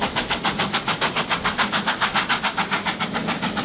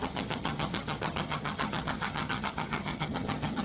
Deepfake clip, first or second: second